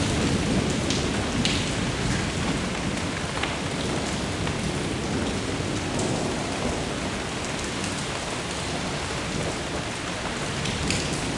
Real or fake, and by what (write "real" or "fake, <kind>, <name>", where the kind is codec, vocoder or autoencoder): real